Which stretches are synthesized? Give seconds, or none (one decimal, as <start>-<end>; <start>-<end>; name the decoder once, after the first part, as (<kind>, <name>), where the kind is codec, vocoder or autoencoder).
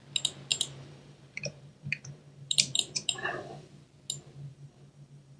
0.5-3.7 (vocoder, BigVGAN v2); 4.5-5.4